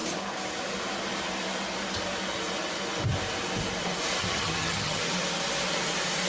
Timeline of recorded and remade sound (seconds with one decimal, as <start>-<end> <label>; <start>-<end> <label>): 0.0-4.2 recorded; 4.2-5.0 remade; 5.0-6.3 recorded